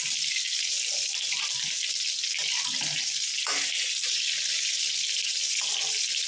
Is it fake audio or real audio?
real